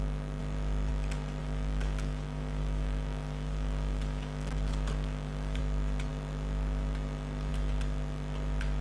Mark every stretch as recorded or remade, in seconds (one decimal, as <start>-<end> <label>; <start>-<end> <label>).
0.0-1.4 recorded; 1.4-5.6 remade; 5.6-8.8 recorded